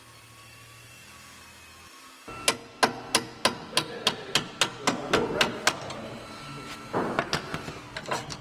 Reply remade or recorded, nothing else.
recorded